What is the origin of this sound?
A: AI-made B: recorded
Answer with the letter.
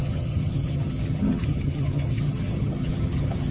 A